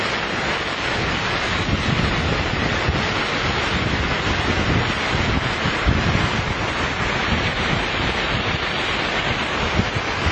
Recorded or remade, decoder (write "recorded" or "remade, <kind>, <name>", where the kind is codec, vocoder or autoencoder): recorded